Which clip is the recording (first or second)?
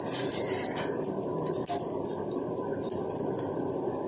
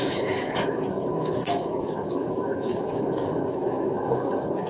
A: first